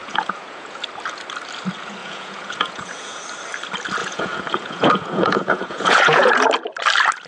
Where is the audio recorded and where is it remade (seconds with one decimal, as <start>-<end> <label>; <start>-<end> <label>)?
0.0-0.8 remade; 0.8-2.0 recorded; 2.0-3.2 remade; 3.2-4.0 recorded; 4.0-6.4 remade; 6.4-7.3 recorded